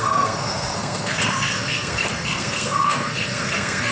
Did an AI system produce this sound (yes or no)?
yes